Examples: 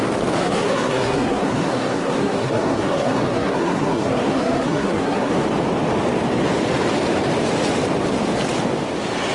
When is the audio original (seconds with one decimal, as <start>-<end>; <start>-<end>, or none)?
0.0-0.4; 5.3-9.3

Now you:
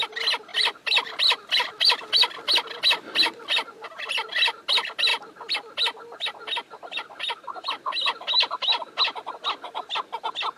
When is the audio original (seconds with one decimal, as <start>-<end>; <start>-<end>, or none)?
0.0-0.5; 4.6-10.6

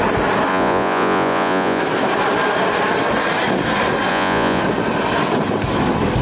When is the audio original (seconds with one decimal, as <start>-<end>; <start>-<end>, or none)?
0.0-0.5; 1.8-4.1; 4.6-6.2

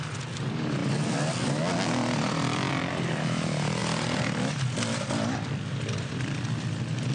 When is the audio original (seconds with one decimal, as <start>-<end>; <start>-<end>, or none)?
0.8-2.7